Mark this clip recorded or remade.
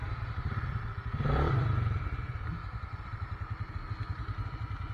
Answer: recorded